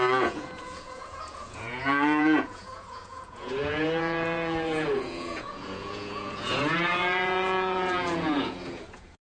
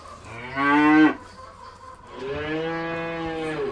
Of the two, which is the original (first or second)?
second